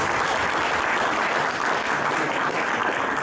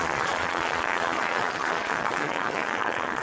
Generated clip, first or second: second